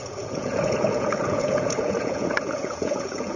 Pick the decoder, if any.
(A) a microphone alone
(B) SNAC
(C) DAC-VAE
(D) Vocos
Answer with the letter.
D